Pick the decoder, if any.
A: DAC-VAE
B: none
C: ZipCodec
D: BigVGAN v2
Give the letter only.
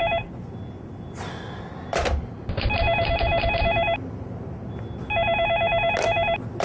B